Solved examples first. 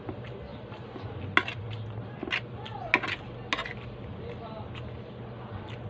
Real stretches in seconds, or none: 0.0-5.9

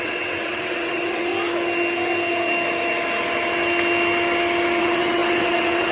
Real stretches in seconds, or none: 1.3-4.8

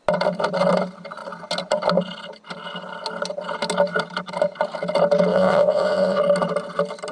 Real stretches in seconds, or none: 0.0-5.3; 6.2-7.1

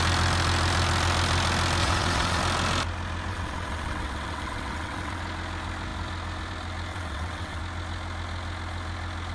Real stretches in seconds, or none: 0.0-1.8; 2.4-3.3; 5.2-6.9; 7.6-9.3

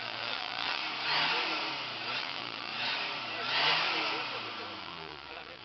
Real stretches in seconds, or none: 0.8-2.2; 2.7-4.8

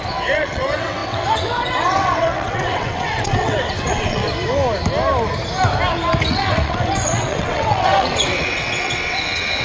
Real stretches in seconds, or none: 4.2-6.3

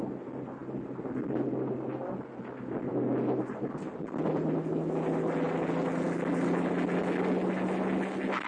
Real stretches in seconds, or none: 0.0-8.5